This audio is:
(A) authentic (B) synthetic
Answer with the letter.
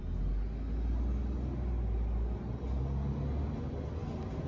A